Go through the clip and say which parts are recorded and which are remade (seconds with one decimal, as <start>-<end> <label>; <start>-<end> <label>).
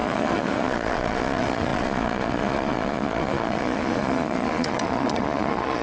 0.0-5.8 remade